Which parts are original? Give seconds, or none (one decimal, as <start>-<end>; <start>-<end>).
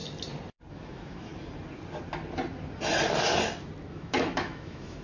0.0-0.7; 1.3-3.9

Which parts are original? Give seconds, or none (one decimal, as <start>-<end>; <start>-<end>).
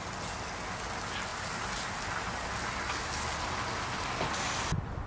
0.0-5.1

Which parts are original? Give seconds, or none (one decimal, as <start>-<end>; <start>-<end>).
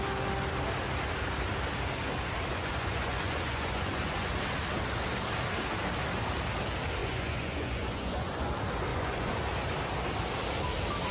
0.0-2.5; 4.3-7.0; 8.5-8.9; 9.4-11.1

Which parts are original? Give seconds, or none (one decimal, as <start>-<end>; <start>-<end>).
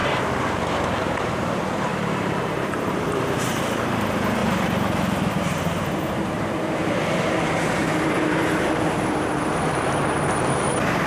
0.0-0.5